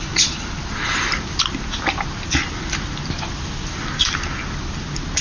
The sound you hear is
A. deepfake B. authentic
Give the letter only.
B